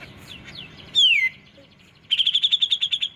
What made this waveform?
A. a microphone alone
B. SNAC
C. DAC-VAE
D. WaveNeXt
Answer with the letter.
A